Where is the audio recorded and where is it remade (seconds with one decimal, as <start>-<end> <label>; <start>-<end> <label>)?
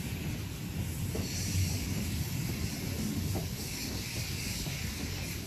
0.0-1.6 recorded; 1.6-2.5 remade; 2.5-3.4 recorded; 3.4-5.5 remade